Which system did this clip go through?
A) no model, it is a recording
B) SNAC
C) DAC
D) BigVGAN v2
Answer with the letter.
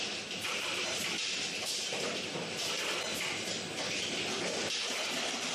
D